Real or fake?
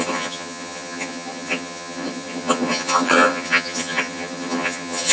fake